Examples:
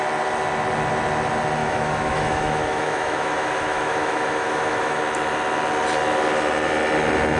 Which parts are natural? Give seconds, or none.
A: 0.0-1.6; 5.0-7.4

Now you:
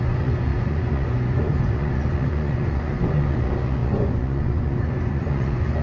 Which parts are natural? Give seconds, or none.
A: none

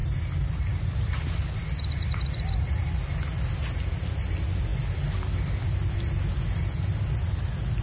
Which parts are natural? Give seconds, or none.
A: 0.0-7.8

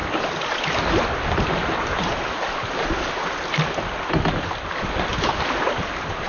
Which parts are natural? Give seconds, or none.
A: 0.0-6.3

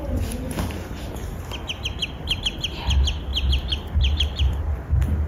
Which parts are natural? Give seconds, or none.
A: 3.3-4.0

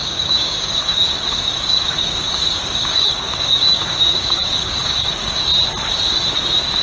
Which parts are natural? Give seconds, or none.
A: 5.5-6.8

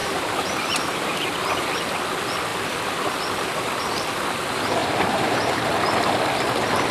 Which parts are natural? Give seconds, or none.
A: 1.2-4.8; 5.6-6.9